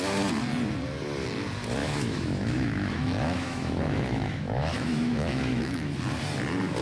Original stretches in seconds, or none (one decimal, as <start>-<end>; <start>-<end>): 0.0-1.8; 5.9-6.8